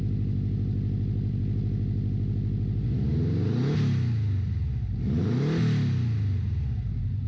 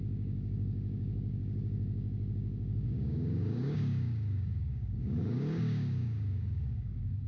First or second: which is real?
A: first